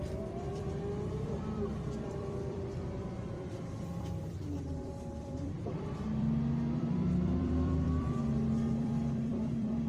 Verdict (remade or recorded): remade